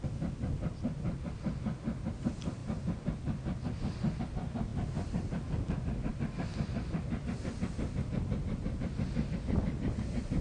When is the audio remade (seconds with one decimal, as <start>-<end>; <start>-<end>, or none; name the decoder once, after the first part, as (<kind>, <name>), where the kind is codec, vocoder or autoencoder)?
none